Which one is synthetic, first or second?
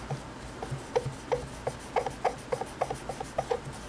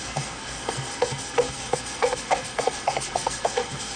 second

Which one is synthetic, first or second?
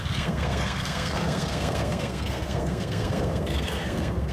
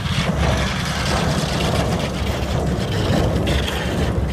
first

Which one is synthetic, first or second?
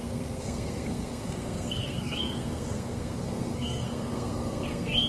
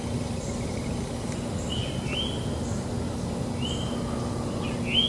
first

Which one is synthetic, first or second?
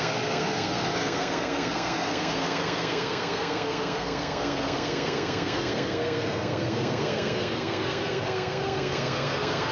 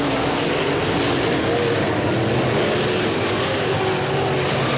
first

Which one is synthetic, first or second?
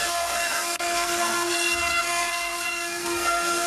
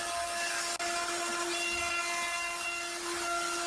first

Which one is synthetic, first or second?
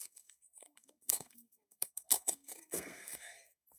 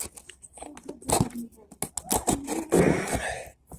first